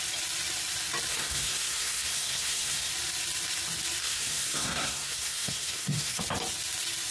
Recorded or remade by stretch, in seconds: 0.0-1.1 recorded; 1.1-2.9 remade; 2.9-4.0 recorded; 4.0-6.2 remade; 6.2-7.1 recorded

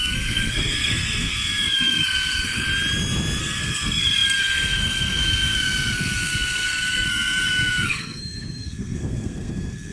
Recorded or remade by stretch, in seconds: 0.0-2.7 remade; 2.7-3.4 recorded; 3.4-9.9 remade

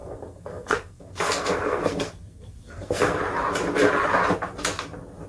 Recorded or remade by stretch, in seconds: 0.0-3.2 remade; 3.2-5.3 recorded

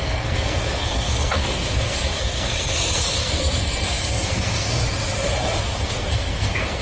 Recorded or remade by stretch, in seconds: 0.0-4.8 remade; 4.8-5.6 recorded; 5.6-6.8 remade